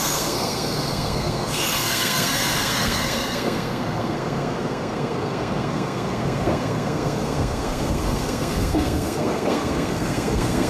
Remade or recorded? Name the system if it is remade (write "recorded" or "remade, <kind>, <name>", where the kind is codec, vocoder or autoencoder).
remade, codec, SNAC